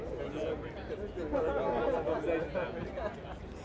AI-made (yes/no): no